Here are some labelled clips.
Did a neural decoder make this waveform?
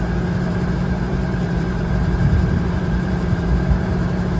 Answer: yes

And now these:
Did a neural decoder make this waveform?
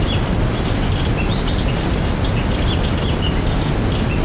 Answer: no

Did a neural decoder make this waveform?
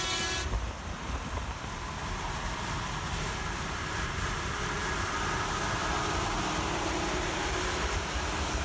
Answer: no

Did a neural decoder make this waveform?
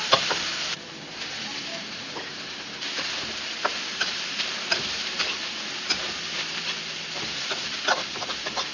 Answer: yes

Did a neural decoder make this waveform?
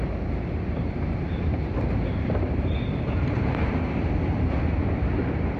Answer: yes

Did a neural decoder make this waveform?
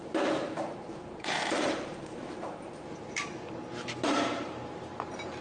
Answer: yes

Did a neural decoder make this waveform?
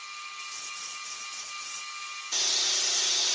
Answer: yes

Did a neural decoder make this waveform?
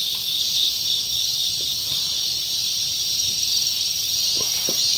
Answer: yes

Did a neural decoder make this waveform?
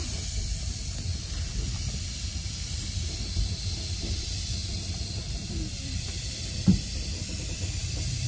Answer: yes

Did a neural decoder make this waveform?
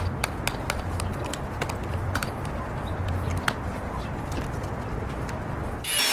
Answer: no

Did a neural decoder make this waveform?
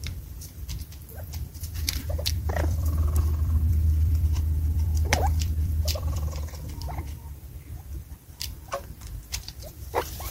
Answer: yes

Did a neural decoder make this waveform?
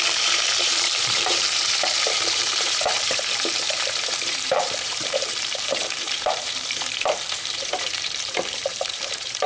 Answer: yes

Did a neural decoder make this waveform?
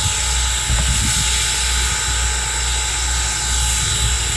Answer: no